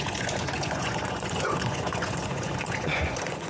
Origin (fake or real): fake